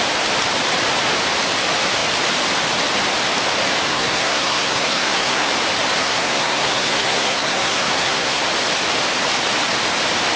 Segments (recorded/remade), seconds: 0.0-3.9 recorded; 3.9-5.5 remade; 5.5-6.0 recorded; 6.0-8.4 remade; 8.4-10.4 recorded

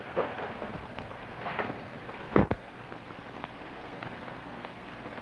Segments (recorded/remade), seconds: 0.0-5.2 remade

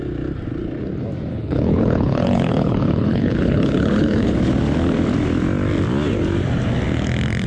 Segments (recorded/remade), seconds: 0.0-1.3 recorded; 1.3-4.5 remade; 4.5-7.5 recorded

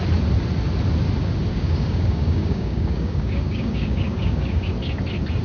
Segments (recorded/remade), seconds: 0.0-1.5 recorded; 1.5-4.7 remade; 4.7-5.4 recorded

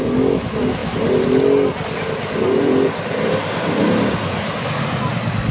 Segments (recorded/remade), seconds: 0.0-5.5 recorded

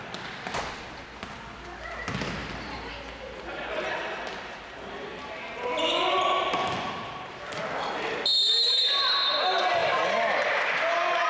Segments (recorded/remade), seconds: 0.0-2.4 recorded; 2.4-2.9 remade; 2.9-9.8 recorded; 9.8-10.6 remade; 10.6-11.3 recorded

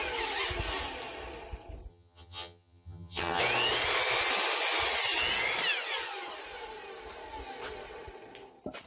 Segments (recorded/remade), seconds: 0.0-1.9 recorded; 1.9-3.4 remade; 3.4-8.9 recorded